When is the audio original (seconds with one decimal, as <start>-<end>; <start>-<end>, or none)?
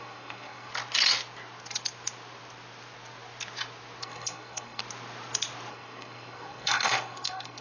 0.7-4.0; 4.8-5.7